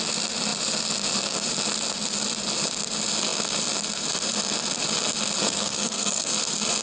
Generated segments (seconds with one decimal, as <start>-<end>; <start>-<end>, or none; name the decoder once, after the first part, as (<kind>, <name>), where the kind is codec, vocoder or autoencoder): 5.4-6.3 (codec, SNAC)